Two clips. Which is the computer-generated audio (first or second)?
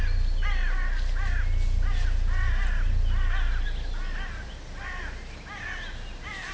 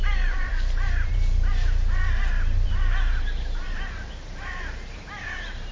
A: second